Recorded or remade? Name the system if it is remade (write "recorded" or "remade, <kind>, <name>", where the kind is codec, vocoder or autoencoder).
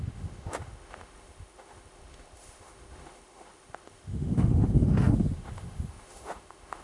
remade, autoencoder, DAC-VAE